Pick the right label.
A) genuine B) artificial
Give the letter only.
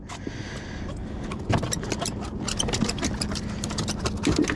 A